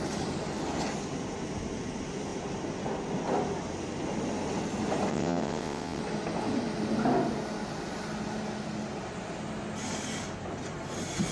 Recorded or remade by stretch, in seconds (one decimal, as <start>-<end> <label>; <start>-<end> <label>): 0.0-5.1 recorded; 5.1-6.0 remade; 6.0-11.3 recorded